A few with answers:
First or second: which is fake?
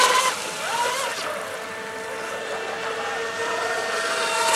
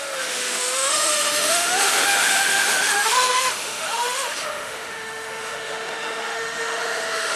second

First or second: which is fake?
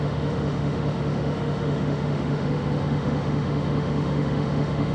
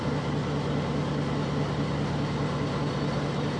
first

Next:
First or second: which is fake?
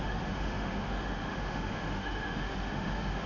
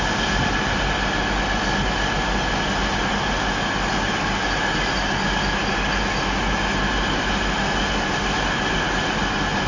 first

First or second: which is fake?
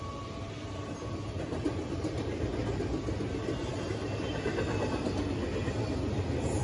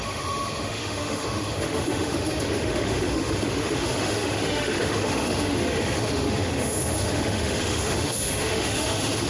second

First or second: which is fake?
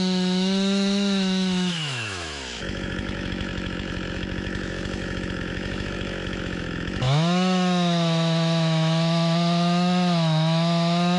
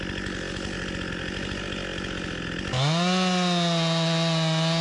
first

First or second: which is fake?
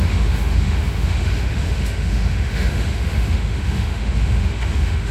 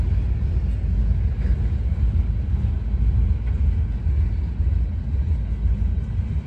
first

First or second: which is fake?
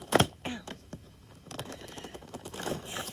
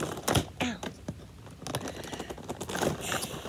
first